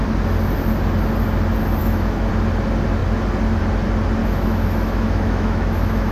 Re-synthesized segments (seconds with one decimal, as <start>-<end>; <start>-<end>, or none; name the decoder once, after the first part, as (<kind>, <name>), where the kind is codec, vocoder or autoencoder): 1.8-2.3 (autoencoder, DAC-VAE); 4.2-6.1